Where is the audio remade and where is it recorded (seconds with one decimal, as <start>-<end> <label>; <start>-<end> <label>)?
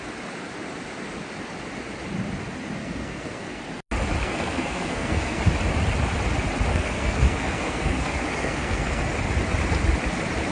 0.0-2.8 recorded; 2.8-3.6 remade; 3.6-4.2 recorded; 4.2-5.4 remade; 5.4-6.7 recorded; 6.7-9.0 remade; 9.0-10.5 recorded